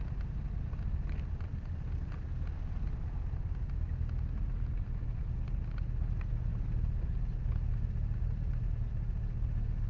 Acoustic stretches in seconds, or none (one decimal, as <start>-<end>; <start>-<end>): 0.0-9.9